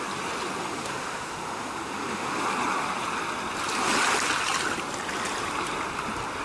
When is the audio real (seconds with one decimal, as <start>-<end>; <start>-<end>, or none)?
0.0-0.6; 2.4-6.4